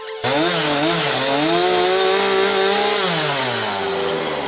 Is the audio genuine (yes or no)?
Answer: yes